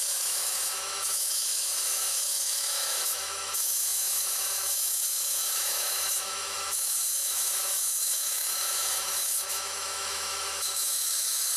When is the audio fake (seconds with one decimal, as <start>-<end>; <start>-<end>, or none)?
0.0-11.6